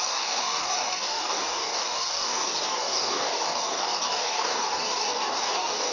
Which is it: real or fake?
fake